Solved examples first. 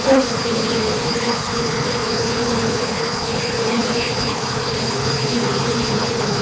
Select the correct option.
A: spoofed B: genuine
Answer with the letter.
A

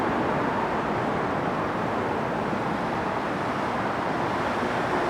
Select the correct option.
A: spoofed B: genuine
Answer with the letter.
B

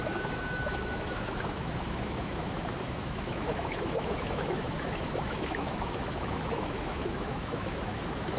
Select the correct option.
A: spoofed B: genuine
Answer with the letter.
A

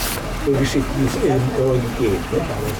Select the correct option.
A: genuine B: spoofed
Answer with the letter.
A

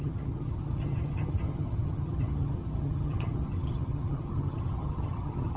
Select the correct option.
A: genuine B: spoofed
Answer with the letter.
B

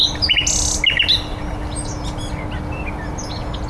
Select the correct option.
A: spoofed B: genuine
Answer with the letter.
B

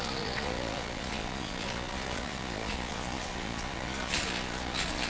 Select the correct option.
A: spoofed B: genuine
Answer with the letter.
A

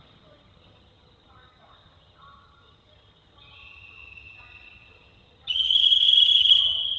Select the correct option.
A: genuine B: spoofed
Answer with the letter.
B